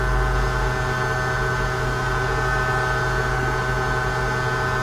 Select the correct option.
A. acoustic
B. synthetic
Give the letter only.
A